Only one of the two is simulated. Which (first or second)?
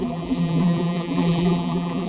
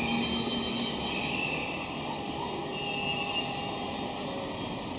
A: first